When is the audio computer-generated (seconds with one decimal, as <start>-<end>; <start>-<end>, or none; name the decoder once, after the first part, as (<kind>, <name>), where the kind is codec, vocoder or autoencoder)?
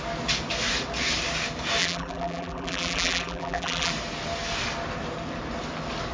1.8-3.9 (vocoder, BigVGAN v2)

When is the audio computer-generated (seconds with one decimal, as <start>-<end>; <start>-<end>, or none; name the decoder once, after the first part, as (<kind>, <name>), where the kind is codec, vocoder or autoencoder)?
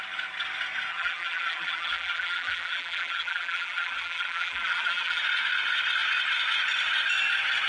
0.9-5.2 (vocoder, BigVGAN v2)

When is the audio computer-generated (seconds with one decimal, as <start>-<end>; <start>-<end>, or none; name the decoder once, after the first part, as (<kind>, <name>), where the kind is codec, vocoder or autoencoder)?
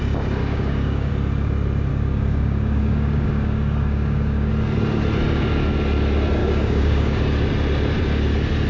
0.4-1.1 (codec, DAC); 1.9-4.5; 6.4-7.2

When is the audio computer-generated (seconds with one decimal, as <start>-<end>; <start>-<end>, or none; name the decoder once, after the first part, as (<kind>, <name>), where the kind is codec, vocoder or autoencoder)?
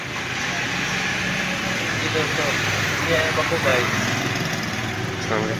none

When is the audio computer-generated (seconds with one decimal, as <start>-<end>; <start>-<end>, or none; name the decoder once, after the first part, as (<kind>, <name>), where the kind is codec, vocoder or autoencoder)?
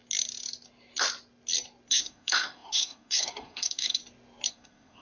1.9-4.0 (codec, SNAC); 4.5-5.0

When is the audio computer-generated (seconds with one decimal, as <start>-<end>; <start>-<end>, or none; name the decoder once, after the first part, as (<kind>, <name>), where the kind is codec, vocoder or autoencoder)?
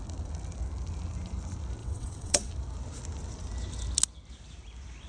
1.8-2.5 (vocoder, WaveNeXt)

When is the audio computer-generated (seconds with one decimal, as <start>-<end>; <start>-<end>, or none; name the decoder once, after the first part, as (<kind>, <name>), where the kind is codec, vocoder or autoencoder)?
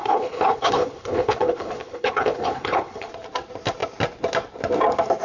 0.0-3.1 (codec, HILCodec)